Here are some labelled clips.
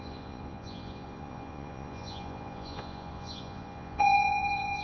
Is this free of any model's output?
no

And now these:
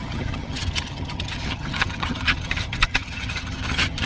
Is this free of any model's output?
no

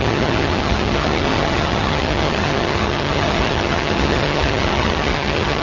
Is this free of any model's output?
no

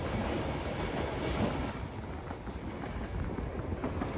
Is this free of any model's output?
yes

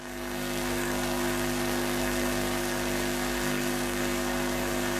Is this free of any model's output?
no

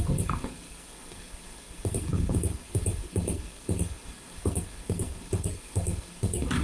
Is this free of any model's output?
no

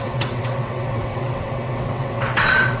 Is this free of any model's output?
no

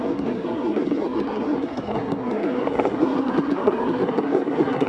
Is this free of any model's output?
no